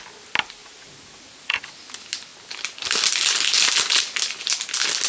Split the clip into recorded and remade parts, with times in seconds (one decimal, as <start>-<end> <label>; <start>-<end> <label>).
0.0-0.6 recorded; 0.6-1.6 remade; 1.6-5.1 recorded